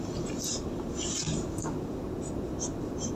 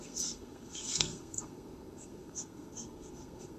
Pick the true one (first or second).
first